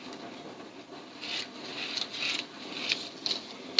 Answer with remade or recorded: recorded